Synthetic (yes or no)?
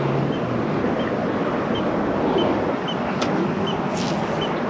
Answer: no